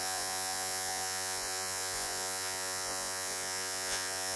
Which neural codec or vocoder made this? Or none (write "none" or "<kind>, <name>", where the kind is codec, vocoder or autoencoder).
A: vocoder, Vocos